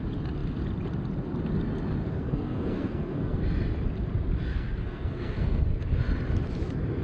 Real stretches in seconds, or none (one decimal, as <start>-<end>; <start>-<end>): 0.0-2.0; 3.4-4.5; 5.8-7.0